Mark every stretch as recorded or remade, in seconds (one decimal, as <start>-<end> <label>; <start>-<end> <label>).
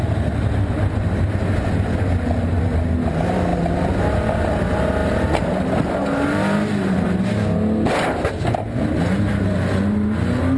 0.0-10.6 recorded